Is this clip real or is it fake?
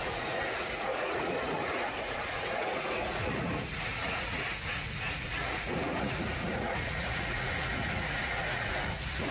fake